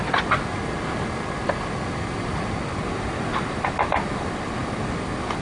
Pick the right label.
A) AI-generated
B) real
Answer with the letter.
B